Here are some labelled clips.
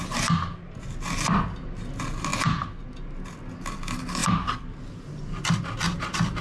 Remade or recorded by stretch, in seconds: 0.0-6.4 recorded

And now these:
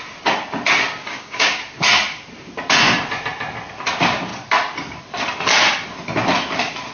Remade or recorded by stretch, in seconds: 0.0-1.0 recorded; 1.0-1.6 remade; 1.6-6.9 recorded